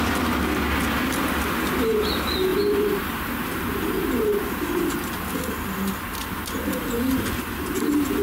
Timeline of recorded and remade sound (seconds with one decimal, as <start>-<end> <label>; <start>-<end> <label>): 0.0-8.2 recorded